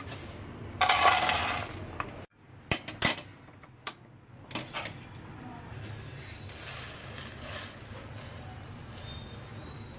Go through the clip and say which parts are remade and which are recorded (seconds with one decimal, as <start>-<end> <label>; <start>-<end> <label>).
0.0-10.0 recorded